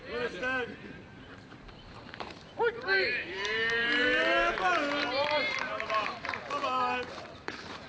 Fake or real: fake